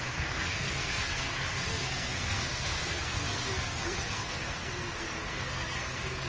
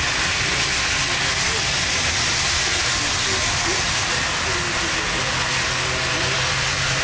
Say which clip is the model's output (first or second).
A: first